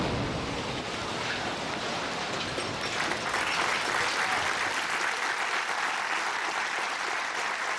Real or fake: real